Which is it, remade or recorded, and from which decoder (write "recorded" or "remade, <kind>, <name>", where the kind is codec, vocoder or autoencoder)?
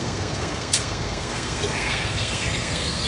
remade, codec, SNAC